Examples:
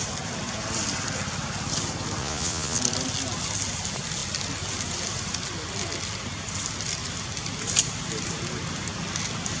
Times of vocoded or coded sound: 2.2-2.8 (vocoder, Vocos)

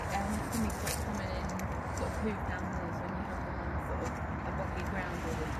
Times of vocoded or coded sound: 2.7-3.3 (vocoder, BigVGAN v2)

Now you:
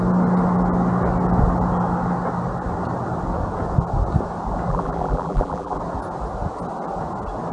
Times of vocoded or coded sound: 4.7-5.8 (vocoder, BigVGAN v2)

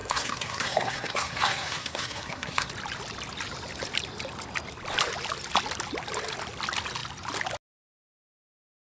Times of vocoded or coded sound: 0.0-2.7 (codec, SNAC)